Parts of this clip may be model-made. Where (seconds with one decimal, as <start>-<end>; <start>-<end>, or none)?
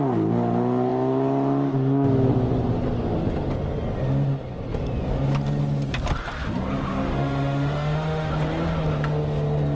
6.9-8.3